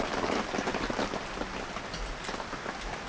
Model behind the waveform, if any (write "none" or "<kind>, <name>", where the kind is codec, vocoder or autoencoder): none